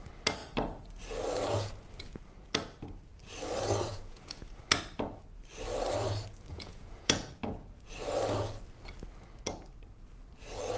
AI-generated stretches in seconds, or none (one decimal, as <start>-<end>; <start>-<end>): 3.9-4.6; 6.5-7.3